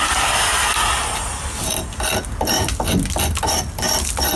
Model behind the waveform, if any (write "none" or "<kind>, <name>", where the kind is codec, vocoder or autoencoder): none